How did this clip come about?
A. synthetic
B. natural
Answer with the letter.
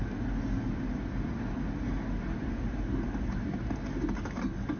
B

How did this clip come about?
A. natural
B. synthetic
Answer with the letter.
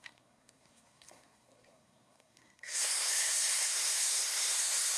B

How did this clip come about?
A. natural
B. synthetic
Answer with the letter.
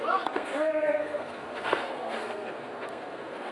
B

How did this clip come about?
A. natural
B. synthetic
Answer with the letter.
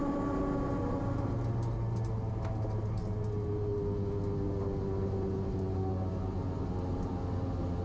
A